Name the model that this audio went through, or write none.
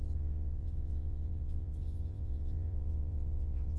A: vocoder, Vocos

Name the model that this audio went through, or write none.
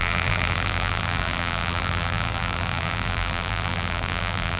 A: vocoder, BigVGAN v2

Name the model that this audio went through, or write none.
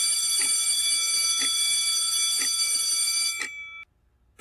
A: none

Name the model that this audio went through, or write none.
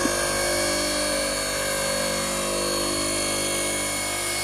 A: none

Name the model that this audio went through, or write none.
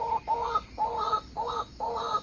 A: none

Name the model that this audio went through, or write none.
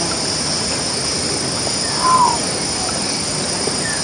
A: none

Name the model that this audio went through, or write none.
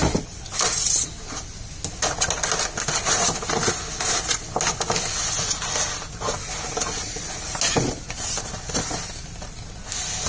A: none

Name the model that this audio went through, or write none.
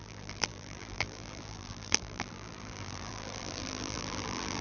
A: vocoder, BigVGAN v2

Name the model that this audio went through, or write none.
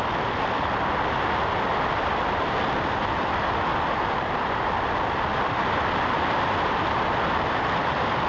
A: vocoder, BigVGAN v2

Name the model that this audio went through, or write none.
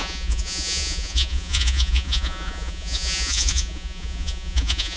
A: vocoder, Vocos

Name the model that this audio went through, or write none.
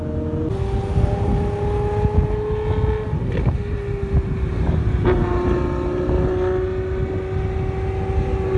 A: none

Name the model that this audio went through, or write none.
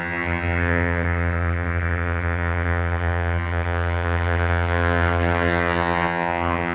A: vocoder, HiFi-GAN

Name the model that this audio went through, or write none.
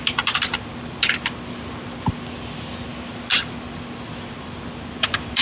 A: none